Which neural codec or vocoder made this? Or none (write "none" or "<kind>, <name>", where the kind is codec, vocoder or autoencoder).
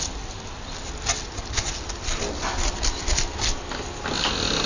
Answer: none